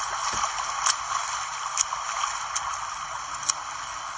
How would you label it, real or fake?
real